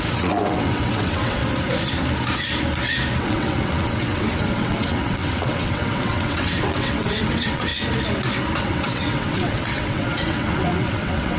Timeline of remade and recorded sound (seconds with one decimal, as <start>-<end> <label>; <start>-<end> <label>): 0.0-1.4 remade; 1.4-3.2 recorded; 3.2-7.7 remade; 7.7-8.6 recorded; 8.6-11.4 remade